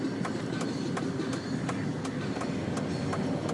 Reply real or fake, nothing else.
real